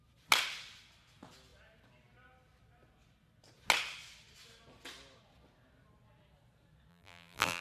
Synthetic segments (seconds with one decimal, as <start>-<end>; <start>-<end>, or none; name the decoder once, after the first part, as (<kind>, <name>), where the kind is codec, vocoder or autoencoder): 6.9-7.6 (vocoder, BigVGAN v2)